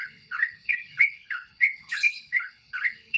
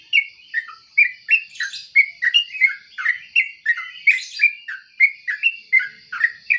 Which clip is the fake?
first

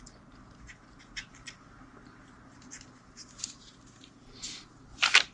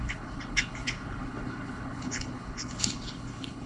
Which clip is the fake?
second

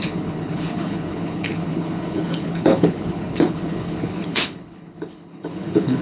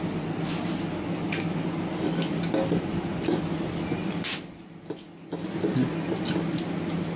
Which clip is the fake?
first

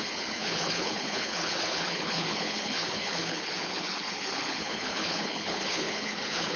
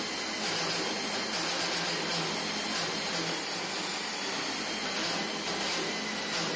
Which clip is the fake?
first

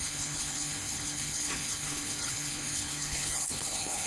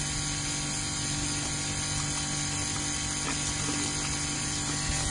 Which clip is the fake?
first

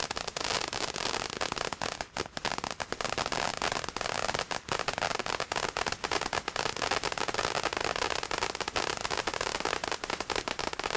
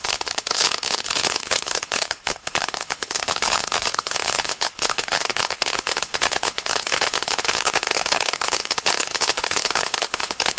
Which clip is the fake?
second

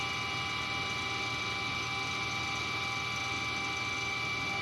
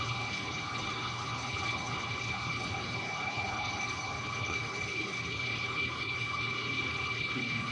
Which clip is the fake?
second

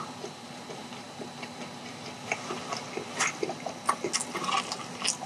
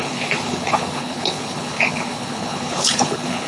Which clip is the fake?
second